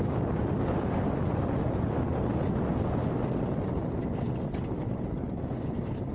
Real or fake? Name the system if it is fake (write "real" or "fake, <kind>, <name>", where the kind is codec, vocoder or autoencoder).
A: real